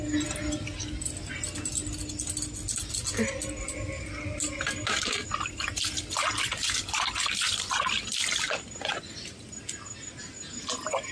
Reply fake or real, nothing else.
real